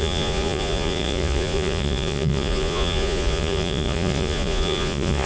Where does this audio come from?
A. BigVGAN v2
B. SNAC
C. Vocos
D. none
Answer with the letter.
C